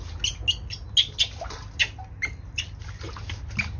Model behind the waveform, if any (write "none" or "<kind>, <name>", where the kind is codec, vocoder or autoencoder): none